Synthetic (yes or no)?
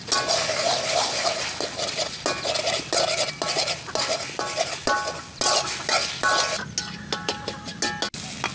no